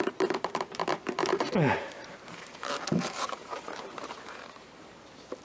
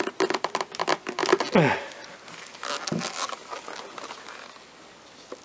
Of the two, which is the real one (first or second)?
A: second